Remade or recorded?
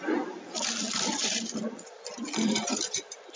remade